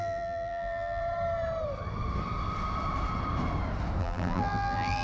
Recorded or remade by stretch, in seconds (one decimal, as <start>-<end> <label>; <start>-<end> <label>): 0.0-1.0 remade; 1.0-4.0 recorded; 4.0-5.0 remade